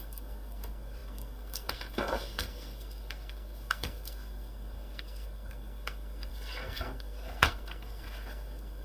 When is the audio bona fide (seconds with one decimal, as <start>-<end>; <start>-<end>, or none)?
none